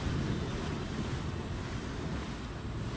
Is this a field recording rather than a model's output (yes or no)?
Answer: yes